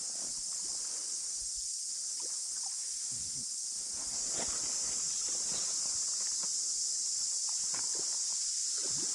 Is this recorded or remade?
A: recorded